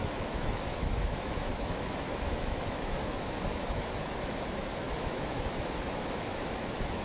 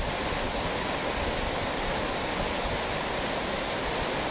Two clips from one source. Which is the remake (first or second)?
first